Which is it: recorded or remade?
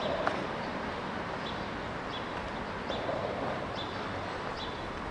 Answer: recorded